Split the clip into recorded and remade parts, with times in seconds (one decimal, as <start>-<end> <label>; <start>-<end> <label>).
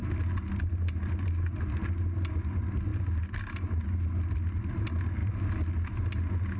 0.0-6.6 recorded